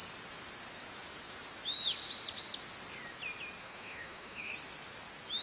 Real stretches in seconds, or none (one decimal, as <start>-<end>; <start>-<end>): 0.0-3.6; 4.5-5.4